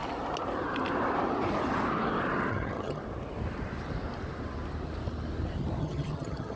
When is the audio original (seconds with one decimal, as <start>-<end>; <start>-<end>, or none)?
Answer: 0.0-2.5; 3.0-5.8